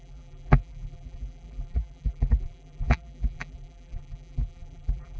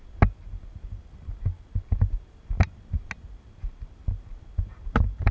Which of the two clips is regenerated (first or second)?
first